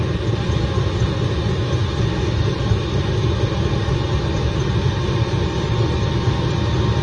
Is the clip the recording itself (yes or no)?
yes